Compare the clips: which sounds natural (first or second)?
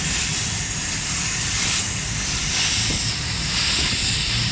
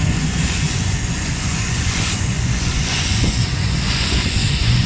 first